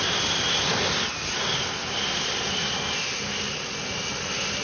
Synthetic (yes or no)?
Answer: no